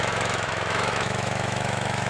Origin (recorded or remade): remade